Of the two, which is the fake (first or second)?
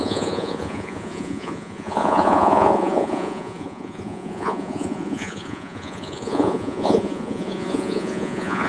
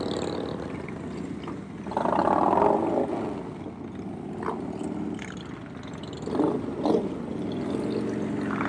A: first